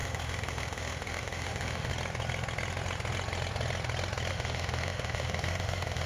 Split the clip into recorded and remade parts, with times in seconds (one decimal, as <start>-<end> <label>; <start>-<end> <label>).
0.0-1.9 remade; 1.9-4.3 recorded; 4.3-6.1 remade